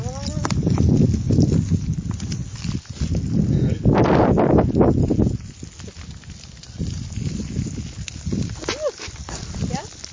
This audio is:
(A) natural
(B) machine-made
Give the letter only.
A